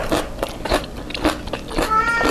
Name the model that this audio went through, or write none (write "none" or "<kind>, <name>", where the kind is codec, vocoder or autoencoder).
none